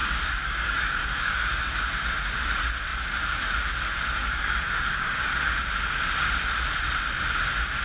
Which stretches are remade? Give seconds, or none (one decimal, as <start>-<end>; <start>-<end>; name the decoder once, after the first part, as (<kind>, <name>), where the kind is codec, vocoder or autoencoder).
0.0-1.7 (codec, DAC); 4.2-5.3